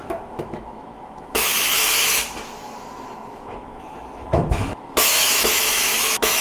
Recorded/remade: remade